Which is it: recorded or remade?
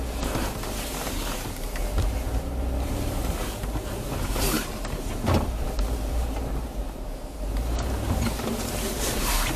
remade